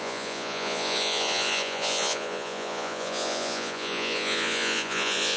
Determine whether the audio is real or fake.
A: fake